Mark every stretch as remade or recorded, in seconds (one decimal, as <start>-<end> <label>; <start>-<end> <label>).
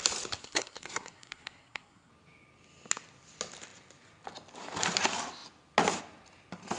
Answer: 0.0-0.4 recorded; 0.4-2.1 remade; 2.1-6.8 recorded